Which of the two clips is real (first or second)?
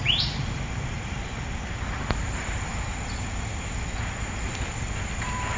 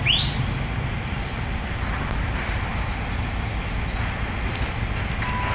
second